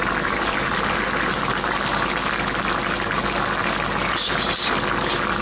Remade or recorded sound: recorded